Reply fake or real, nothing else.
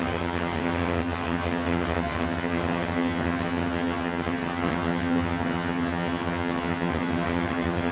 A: fake